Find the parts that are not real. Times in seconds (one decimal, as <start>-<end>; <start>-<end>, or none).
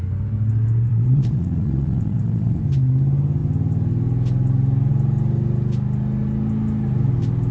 0.9-2.6